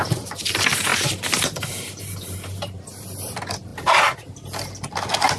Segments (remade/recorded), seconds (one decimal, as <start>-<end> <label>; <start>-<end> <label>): 0.0-5.4 recorded